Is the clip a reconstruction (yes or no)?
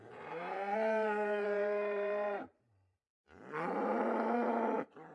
yes